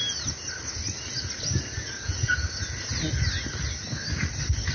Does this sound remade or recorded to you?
recorded